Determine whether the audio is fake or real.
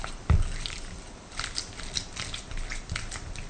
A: real